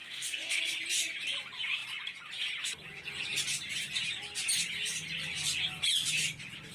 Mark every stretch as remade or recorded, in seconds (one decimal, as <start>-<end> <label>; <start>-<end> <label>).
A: 0.0-0.6 remade; 0.6-6.7 recorded